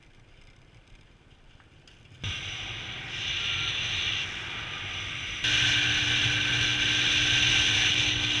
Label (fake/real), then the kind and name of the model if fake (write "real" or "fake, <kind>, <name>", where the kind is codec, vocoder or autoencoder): real